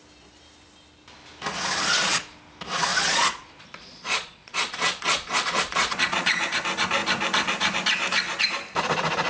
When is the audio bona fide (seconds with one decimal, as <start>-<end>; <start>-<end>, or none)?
0.0-2.9; 6.4-9.3

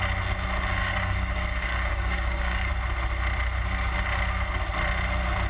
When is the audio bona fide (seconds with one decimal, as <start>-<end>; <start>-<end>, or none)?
0.0-0.8; 2.7-5.5

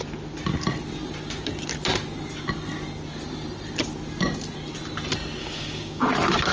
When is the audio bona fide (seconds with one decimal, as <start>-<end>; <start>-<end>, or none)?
0.0-5.4; 6.0-6.5

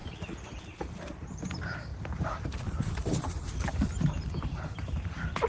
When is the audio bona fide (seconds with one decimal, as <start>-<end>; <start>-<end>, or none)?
none

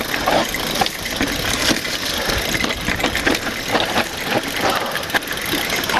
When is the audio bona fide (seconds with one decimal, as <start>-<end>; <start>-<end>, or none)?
0.0-6.0

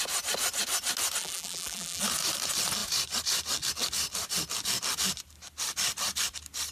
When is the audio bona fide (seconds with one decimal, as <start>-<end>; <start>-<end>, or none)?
0.0-1.2; 2.0-6.7